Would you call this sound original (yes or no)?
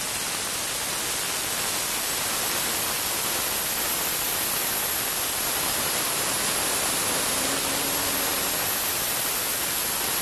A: yes